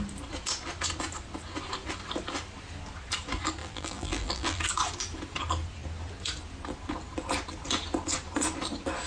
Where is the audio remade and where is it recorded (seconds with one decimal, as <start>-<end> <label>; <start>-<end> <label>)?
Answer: 0.0-3.6 recorded; 3.6-4.6 remade; 4.6-9.1 recorded